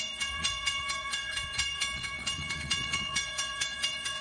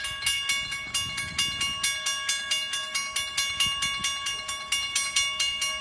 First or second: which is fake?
first